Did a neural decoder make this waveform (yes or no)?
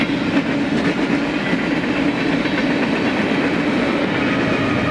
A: no